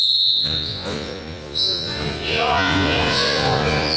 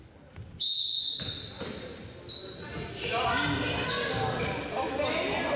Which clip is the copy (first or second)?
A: first